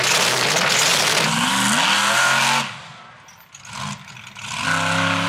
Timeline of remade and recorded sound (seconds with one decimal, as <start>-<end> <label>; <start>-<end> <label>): 0.0-5.3 recorded